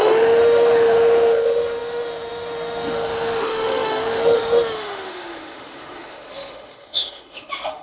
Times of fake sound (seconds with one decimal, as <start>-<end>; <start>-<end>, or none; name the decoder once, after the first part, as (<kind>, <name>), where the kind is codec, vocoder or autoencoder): 0.0-7.8 (autoencoder, DAC-VAE)